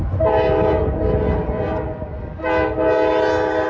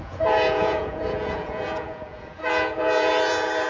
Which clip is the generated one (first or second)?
second